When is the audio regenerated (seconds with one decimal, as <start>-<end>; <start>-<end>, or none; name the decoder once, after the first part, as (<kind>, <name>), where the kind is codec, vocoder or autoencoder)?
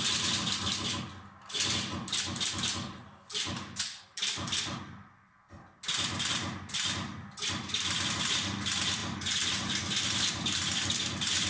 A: none